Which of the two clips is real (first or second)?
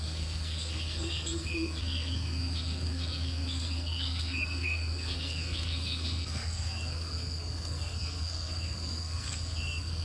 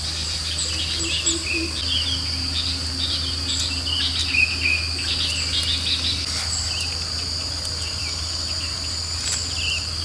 second